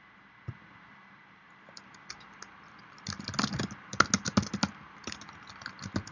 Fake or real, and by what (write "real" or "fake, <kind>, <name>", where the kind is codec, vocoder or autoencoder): real